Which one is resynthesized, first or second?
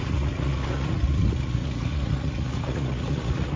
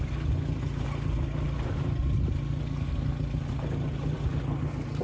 first